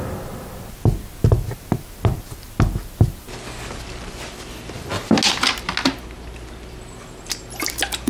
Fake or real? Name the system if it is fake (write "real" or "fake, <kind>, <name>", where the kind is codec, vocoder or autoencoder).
real